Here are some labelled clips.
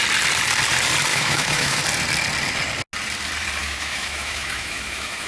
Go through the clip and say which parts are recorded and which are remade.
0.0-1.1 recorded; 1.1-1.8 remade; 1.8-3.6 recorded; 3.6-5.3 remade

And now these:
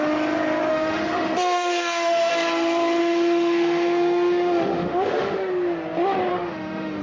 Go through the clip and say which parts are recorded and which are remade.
0.0-0.7 recorded; 0.7-2.3 remade; 2.3-3.0 recorded; 3.0-5.5 remade; 5.5-6.3 recorded; 6.3-7.0 remade

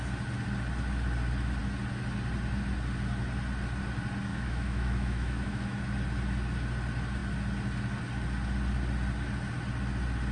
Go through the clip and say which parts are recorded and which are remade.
0.0-4.3 recorded; 4.3-5.8 remade; 5.8-10.3 recorded

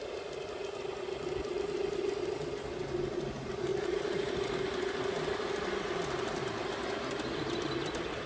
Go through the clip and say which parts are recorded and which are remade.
0.0-8.3 recorded

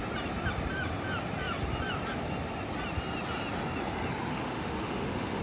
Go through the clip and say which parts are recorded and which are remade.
0.0-4.3 recorded; 4.3-5.4 remade

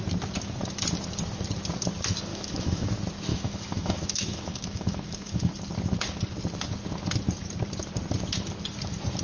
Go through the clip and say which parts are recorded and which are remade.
0.0-2.3 recorded; 2.3-2.9 remade; 2.9-3.3 recorded; 3.3-5.5 remade; 5.5-9.2 recorded